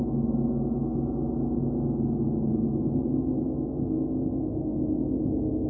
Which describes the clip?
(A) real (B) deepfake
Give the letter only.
A